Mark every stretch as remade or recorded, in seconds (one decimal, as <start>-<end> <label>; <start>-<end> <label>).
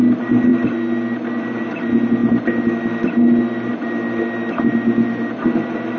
0.0-6.0 recorded